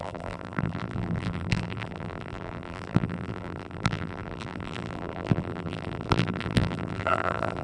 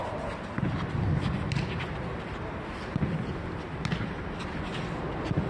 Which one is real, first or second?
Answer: second